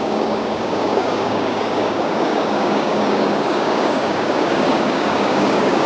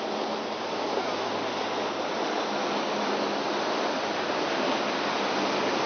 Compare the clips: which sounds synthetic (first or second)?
first